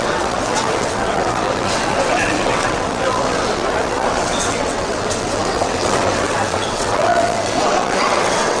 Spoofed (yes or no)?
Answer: yes